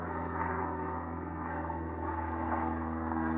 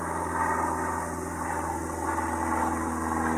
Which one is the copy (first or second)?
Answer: first